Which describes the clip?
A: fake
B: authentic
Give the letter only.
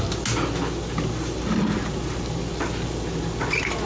B